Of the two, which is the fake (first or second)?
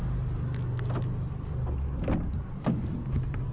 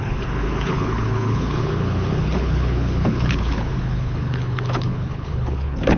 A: second